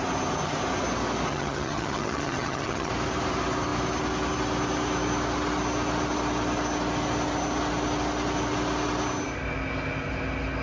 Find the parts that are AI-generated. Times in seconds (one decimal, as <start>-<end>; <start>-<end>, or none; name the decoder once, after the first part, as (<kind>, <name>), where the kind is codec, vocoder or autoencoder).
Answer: 1.3-2.9 (vocoder, HiFi-GAN)